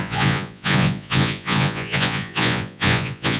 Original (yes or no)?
no